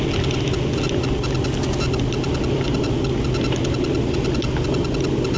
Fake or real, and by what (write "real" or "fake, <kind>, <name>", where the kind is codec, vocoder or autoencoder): real